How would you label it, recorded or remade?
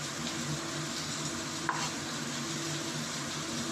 recorded